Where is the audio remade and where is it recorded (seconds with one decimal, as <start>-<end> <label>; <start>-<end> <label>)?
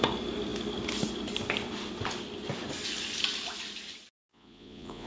0.0-4.3 recorded; 4.3-5.1 remade